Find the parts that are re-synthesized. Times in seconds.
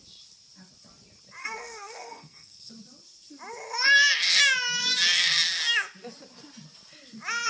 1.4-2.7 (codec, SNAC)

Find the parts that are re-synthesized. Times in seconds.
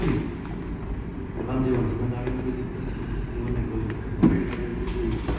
none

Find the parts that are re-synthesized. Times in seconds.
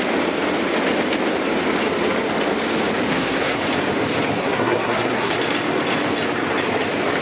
3.1-3.6 (codec, SNAC); 4.4-5.3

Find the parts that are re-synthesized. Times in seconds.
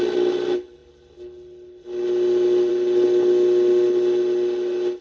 none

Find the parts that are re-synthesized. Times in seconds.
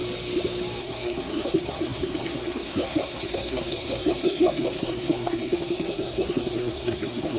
0.8-7.4 (codec, SNAC)